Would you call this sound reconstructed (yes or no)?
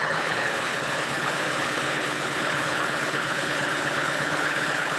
yes